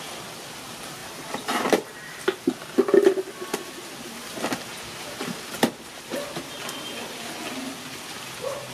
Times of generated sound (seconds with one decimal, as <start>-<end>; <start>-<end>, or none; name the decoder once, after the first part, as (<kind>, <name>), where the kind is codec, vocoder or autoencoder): 1.0-2.2 (vocoder, BigVGAN v2)